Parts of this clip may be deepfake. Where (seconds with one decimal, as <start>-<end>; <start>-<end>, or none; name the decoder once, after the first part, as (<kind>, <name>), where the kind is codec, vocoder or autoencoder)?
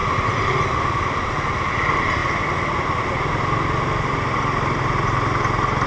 none